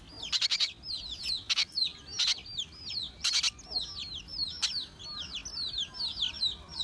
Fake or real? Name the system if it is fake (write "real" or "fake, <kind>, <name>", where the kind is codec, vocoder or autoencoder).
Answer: real